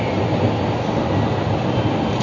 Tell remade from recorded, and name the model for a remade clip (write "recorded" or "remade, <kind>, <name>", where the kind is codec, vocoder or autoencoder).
recorded